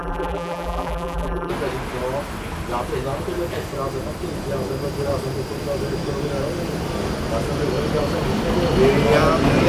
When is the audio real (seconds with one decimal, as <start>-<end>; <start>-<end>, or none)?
1.5-9.7

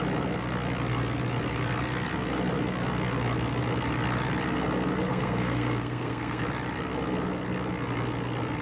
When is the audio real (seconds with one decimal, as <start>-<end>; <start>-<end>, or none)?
0.0-5.1; 6.4-8.6

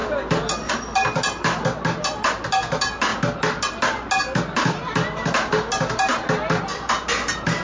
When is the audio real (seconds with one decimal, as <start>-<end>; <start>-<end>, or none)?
0.0-7.6

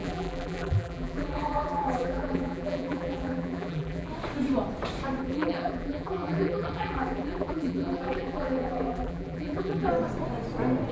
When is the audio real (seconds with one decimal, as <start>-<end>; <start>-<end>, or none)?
4.1-5.2; 9.9-10.9

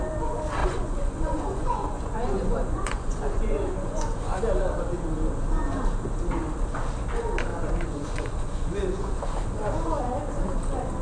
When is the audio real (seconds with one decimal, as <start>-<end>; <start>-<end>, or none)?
0.0-0.6; 4.4-7.5; 9.2-11.0

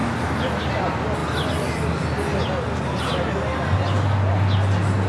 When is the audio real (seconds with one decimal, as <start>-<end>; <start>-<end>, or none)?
0.0-5.1